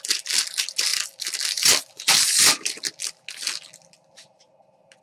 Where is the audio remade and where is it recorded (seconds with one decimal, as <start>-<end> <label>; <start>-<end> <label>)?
0.0-5.0 recorded